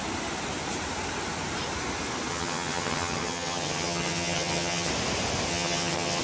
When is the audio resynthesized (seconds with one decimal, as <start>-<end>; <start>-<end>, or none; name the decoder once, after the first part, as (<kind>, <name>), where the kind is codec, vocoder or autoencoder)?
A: 2.3-4.9 (vocoder, HiFi-GAN); 5.5-6.2